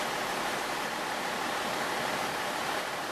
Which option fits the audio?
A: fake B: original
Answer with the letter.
B